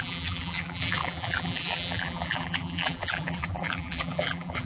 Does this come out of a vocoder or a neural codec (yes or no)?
yes